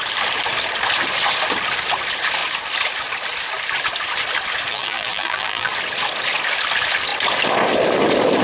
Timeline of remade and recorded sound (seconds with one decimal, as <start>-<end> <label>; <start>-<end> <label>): 0.0-4.7 recorded; 4.7-5.7 remade; 5.7-8.4 recorded